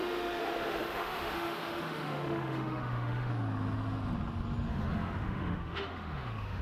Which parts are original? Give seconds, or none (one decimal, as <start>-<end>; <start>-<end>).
3.3-4.7